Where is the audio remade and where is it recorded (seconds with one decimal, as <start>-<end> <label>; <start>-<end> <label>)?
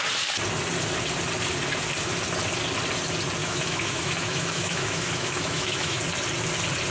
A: 0.0-3.4 recorded; 3.4-6.0 remade; 6.0-6.9 recorded